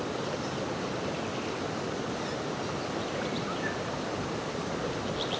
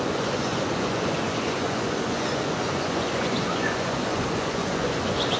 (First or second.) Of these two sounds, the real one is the first